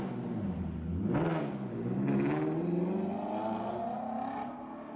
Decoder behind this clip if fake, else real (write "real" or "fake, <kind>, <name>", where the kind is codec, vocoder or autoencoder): real